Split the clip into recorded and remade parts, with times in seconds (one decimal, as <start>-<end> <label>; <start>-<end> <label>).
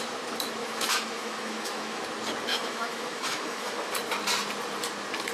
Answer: 0.0-0.6 recorded; 0.6-2.0 remade; 2.0-2.5 recorded; 2.5-3.9 remade; 3.9-5.3 recorded